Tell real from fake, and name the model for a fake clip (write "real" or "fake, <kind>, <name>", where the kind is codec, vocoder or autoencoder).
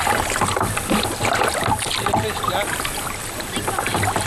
real